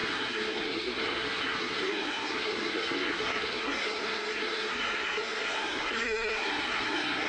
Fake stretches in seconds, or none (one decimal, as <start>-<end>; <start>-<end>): 0.0-7.3